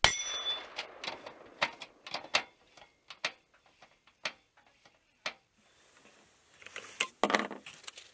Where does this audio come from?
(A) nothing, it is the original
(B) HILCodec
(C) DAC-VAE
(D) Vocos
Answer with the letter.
A